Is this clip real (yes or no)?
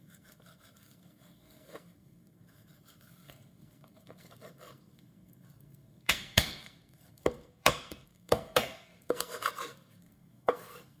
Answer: no